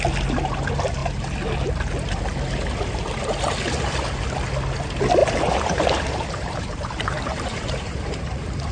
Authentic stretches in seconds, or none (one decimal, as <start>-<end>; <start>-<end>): 0.0-5.2